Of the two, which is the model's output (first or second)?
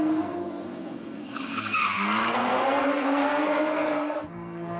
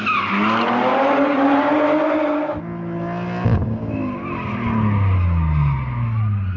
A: first